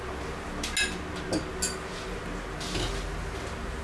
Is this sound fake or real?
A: real